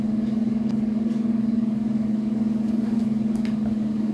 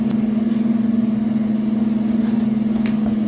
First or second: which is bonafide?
second